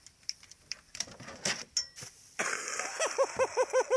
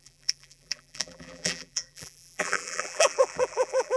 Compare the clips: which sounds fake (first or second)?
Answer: second